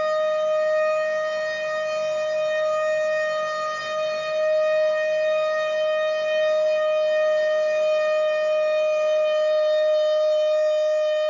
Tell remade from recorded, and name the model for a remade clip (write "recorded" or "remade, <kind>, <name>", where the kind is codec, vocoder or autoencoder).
recorded